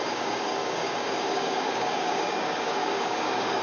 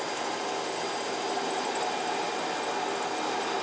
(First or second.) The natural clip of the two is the second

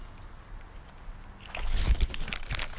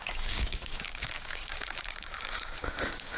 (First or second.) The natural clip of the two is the first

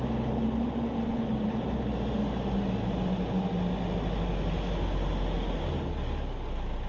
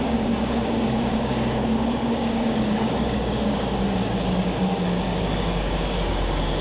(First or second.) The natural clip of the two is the first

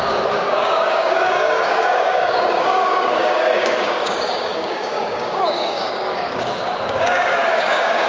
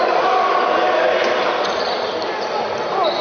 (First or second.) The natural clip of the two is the second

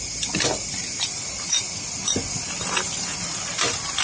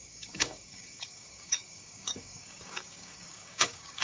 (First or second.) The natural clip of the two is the first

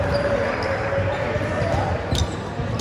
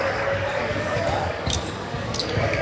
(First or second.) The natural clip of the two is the first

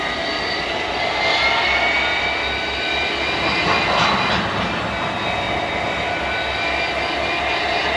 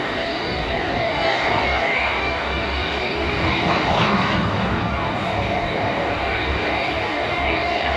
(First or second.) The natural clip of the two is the first